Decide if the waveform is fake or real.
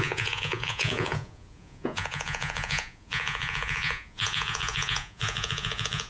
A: fake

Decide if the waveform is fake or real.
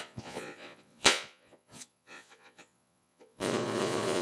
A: fake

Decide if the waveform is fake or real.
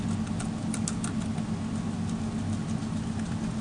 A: real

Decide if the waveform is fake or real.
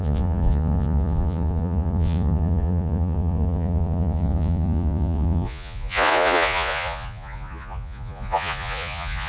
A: fake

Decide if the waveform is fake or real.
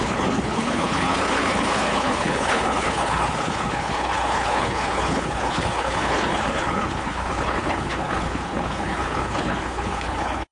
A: fake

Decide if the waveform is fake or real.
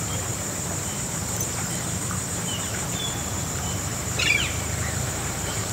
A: fake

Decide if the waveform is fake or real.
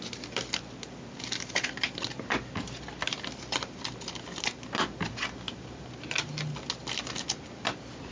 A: real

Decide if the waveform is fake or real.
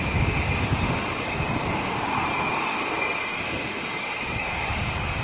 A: fake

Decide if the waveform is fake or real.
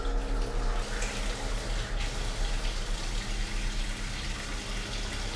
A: real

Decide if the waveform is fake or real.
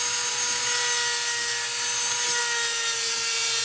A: real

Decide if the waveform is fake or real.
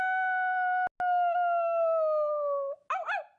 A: real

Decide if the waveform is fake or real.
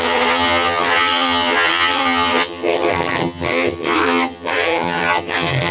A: fake